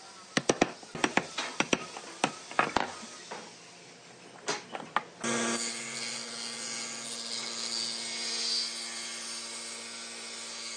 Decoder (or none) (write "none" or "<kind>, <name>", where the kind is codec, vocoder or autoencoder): none